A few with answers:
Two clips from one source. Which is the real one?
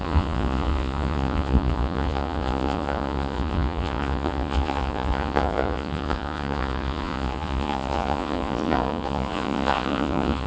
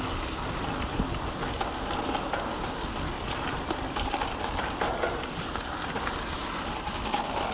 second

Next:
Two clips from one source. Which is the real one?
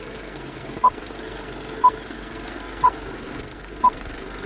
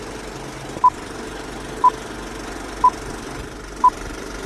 second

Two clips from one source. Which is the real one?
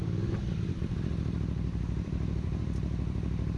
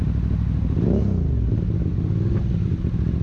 second